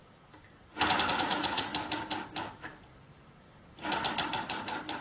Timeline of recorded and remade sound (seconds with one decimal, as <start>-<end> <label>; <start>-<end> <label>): 0.0-1.1 recorded; 1.1-1.7 remade; 1.7-5.0 recorded